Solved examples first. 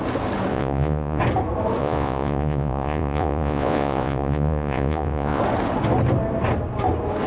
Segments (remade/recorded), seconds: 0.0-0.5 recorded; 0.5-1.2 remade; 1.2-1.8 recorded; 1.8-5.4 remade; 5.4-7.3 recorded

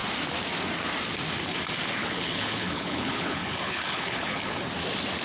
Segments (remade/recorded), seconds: 0.0-2.0 recorded; 2.0-4.6 remade; 4.6-5.2 recorded

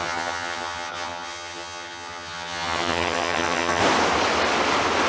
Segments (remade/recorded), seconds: 0.0-3.8 remade; 3.8-5.1 recorded